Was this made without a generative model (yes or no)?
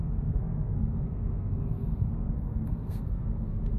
no